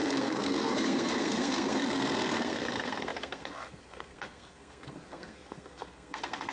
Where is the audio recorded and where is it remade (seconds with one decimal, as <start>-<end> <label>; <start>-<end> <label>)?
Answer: 0.0-6.5 remade